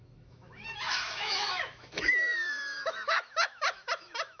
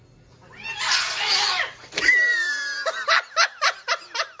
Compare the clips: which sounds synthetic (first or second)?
first